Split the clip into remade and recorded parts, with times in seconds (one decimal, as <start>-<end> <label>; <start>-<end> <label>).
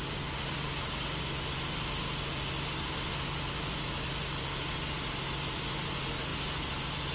0.0-7.1 recorded